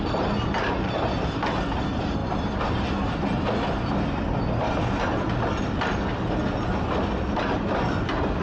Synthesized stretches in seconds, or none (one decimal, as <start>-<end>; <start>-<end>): none